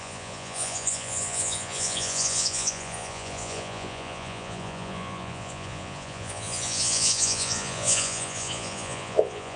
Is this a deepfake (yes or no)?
yes